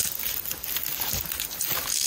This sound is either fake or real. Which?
real